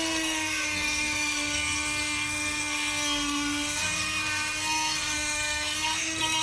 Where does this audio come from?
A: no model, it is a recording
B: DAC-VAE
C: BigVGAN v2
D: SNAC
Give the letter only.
D